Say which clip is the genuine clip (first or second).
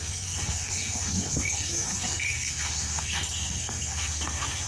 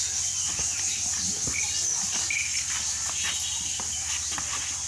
second